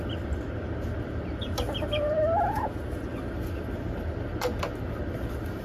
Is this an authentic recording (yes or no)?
yes